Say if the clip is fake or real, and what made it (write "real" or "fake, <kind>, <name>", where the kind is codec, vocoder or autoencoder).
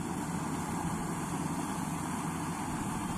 real